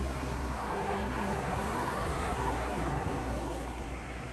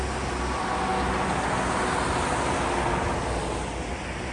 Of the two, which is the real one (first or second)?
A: second